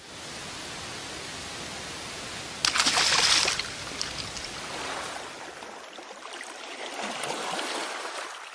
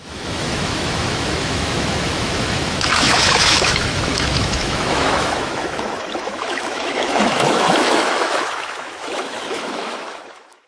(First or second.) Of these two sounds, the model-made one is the second